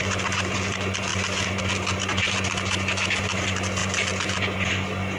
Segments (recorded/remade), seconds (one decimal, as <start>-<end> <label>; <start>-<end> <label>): 0.0-5.2 recorded